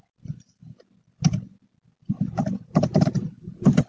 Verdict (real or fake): real